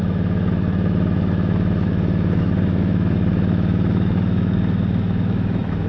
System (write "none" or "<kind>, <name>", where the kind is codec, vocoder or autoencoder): autoencoder, DAC-VAE